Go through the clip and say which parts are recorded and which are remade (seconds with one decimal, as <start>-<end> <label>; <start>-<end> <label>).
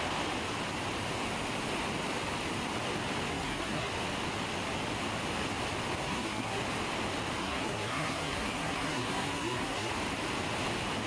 0.0-3.3 recorded; 3.3-3.9 remade; 3.9-6.0 recorded; 6.0-6.6 remade; 6.6-7.4 recorded; 7.4-9.9 remade; 9.9-11.1 recorded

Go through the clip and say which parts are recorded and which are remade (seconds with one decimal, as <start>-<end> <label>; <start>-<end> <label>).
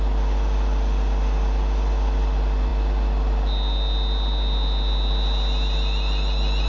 0.0-6.7 recorded